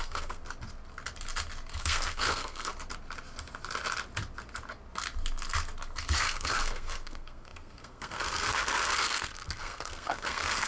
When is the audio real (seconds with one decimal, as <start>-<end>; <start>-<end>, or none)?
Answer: 0.4-1.8; 2.7-6.2